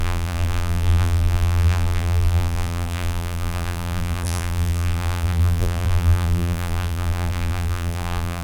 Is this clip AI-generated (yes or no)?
yes